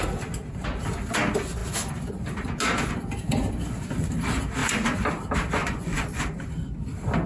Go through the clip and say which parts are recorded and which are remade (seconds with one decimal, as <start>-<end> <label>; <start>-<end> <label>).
0.0-5.6 recorded; 5.6-6.2 remade; 6.2-7.3 recorded